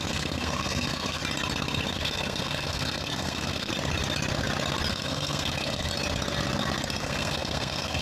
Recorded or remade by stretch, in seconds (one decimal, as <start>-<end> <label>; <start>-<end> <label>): 0.0-1.2 remade; 1.2-1.9 recorded; 1.9-3.7 remade; 3.7-4.9 recorded; 4.9-5.9 remade; 5.9-7.0 recorded; 7.0-8.0 remade